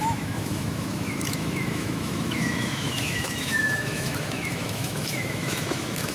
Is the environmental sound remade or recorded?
remade